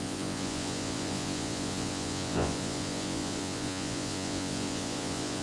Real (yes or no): no